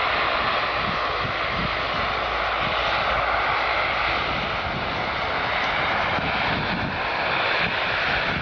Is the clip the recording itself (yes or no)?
yes